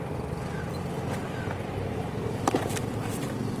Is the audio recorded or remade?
remade